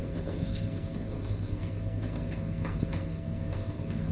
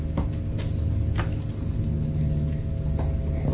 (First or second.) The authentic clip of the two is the second